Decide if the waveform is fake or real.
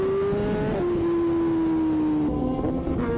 real